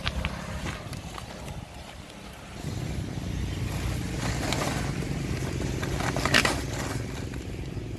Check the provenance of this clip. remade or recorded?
recorded